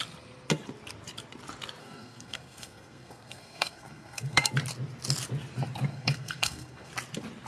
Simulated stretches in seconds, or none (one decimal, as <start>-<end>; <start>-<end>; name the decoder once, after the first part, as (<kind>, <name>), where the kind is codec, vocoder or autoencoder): 1.8-4.5 (codec, SNAC); 5.9-6.9